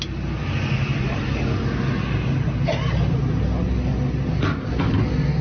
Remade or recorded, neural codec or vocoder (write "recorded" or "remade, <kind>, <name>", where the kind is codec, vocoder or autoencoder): recorded